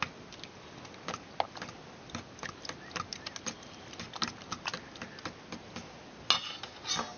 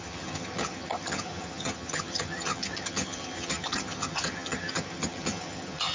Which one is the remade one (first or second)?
second